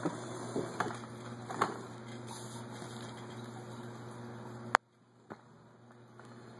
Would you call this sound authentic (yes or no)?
yes